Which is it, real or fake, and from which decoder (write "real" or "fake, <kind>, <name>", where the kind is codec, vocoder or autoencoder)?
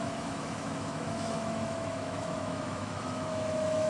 fake, autoencoder, DAC-VAE